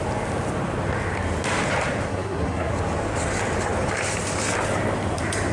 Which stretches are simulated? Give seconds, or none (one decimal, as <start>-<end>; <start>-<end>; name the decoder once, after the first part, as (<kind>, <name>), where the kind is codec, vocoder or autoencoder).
2.1-2.7 (codec, SNAC)